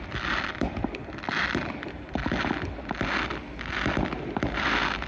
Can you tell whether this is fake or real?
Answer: real